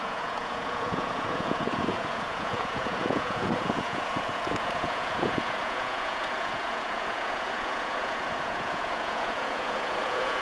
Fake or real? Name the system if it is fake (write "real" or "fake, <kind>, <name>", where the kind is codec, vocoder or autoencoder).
fake, vocoder, Vocos